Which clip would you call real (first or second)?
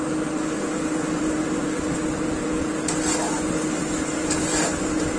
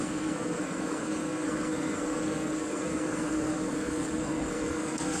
first